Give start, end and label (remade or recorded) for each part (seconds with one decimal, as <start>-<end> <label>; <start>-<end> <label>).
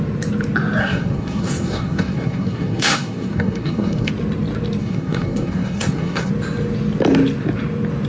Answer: 0.0-0.8 recorded; 0.8-4.1 remade; 4.1-4.8 recorded; 4.8-6.3 remade; 6.3-8.1 recorded